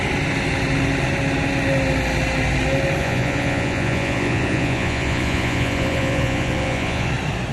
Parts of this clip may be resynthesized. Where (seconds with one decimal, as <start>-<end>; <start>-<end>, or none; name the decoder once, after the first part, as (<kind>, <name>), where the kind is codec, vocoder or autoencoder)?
3.0-7.1 (vocoder, Vocos)